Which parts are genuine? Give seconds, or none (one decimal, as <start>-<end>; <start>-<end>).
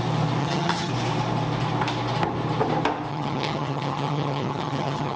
0.0-0.4; 0.9-3.1